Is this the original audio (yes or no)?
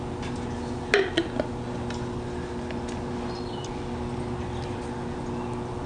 yes